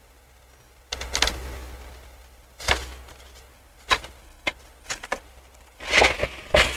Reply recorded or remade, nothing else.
recorded